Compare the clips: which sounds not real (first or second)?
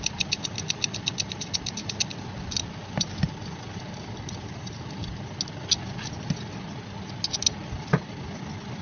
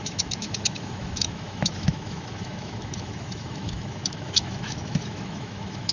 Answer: second